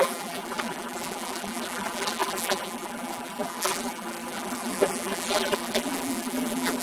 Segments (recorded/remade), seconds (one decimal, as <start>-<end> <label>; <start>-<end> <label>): 0.0-6.8 remade